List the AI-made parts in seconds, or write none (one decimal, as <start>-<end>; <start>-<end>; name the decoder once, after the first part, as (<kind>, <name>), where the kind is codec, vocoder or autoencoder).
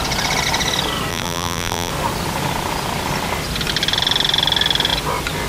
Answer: 1.1-1.9 (vocoder, BigVGAN v2)